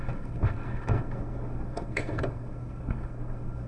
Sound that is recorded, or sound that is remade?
remade